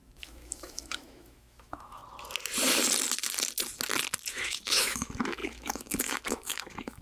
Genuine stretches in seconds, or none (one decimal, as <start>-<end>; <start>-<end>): 2.0-4.3